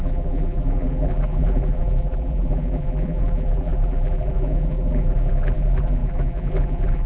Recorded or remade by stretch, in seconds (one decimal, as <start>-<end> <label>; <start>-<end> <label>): 0.0-7.1 remade